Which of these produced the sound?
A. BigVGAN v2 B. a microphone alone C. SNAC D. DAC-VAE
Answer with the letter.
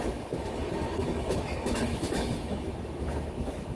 D